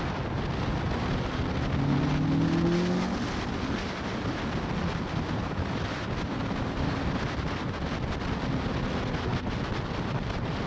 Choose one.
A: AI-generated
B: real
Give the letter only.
B